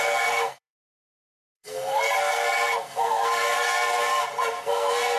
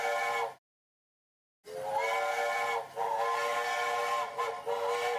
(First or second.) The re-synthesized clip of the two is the first